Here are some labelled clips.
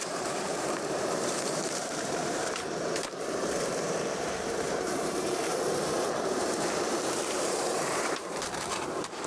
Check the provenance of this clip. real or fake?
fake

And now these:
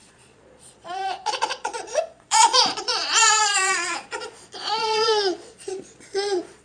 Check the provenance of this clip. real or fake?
fake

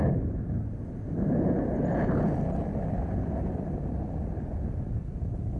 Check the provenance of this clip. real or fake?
real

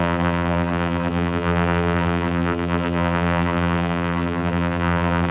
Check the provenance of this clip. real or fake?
fake